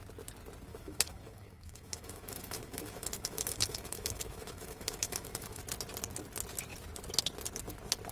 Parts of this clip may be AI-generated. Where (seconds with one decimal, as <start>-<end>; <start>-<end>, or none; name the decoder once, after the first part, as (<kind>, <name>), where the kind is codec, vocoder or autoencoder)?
0.7-5.6 (autoencoder, DAC-VAE)